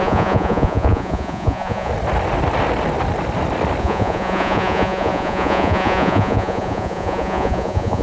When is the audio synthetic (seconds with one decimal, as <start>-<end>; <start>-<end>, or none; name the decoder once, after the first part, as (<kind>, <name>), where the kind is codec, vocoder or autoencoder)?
0.0-1.9 (vocoder, Vocos); 3.8-8.0